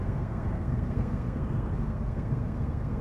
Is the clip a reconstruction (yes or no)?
yes